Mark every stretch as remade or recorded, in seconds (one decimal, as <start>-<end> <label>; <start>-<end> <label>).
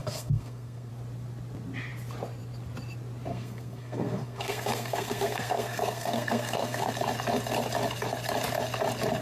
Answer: 0.0-0.9 remade; 0.9-3.3 recorded; 3.3-6.9 remade; 6.9-9.2 recorded